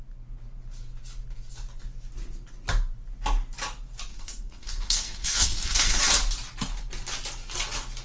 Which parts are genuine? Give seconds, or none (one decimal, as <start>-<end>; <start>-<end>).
0.0-4.1; 6.0-8.0